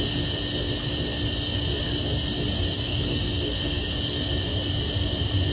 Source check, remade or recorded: recorded